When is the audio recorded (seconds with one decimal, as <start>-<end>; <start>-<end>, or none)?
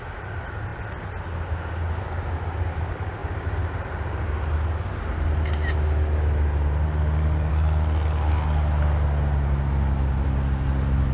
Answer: 0.0-11.1